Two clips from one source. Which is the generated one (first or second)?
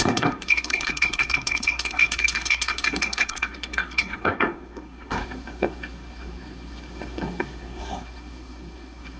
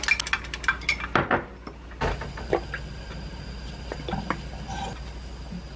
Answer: first